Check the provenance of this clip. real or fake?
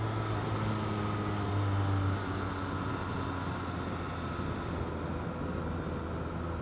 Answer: real